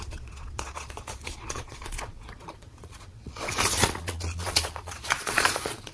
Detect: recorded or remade remade